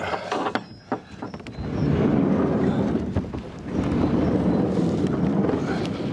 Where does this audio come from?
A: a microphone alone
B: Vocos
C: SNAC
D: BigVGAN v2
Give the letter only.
A